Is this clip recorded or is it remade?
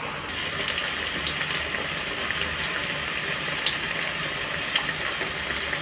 recorded